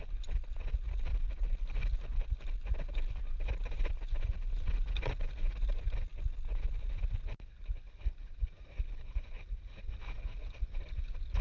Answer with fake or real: real